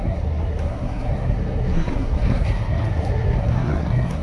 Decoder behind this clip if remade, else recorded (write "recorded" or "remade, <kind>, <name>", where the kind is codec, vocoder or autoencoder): remade, codec, SNAC